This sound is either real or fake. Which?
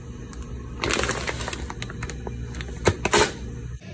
real